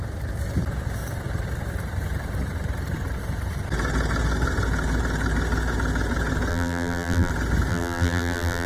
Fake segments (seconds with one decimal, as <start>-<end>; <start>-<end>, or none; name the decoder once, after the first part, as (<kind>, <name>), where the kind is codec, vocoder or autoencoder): 6.5-7.3 (vocoder, BigVGAN v2); 7.7-8.7